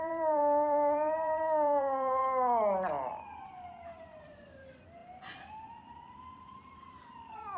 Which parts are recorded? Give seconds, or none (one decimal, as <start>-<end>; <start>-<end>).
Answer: 2.2-4.2; 5.0-5.7

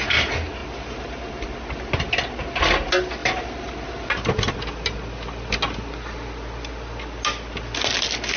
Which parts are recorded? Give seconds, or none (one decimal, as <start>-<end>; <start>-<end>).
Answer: 0.0-0.6; 1.4-3.2; 4.3-8.4

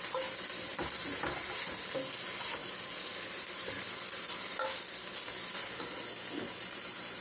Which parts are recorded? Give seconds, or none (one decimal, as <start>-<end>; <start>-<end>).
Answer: 0.0-0.7; 1.3-2.6; 5.8-7.2

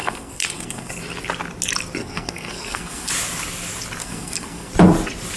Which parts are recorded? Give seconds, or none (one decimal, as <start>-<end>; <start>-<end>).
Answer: 0.9-2.0; 3.1-4.0; 4.7-5.4

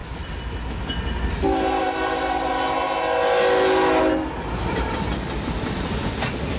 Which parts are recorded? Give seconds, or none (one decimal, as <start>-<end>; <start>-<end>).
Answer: 0.0-6.6

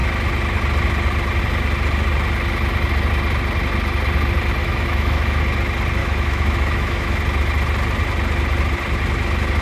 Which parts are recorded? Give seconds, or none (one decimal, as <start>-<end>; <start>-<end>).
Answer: 0.0-4.6; 5.4-6.0; 7.2-9.6

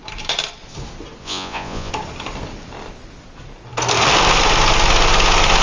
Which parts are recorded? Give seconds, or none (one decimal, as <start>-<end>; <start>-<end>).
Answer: 0.0-1.2; 1.9-5.6